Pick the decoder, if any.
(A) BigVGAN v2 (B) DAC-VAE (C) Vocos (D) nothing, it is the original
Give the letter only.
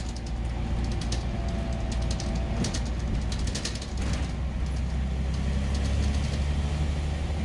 D